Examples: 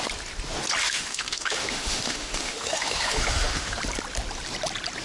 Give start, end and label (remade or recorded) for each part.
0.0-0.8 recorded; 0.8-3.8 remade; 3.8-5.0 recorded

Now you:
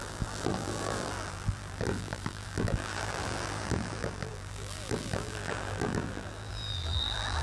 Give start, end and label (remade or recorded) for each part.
0.0-7.4 remade

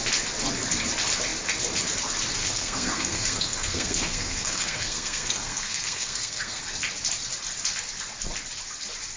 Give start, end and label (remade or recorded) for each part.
0.0-2.4 recorded; 2.4-6.6 remade; 6.6-9.2 recorded